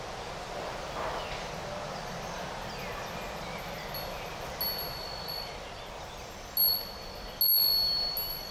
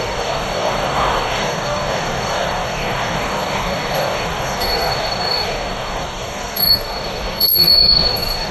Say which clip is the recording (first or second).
first